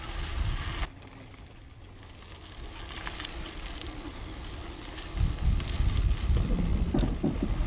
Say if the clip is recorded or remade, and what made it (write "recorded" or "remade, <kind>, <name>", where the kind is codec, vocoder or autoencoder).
recorded